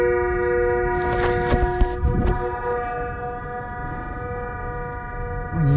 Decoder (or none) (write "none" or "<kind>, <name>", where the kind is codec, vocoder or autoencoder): none